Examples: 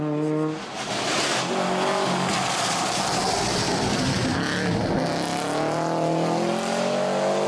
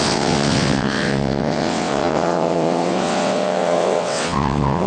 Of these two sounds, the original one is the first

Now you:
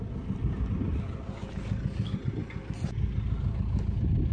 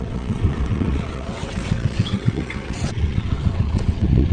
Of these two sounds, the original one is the first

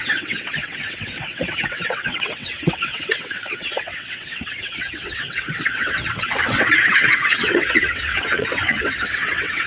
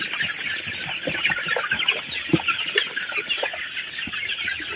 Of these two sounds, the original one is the second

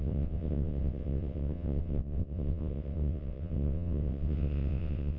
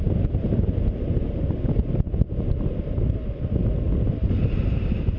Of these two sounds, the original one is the second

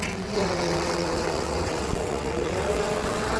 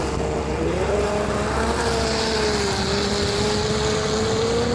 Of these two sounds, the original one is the second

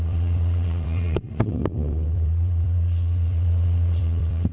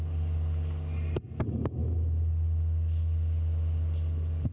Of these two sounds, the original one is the second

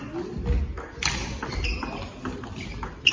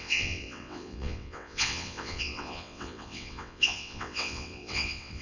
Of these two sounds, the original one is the first